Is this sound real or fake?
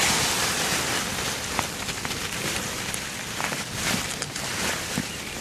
fake